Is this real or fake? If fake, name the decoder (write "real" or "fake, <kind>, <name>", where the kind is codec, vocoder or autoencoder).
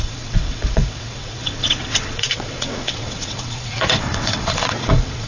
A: fake, vocoder, WaveNeXt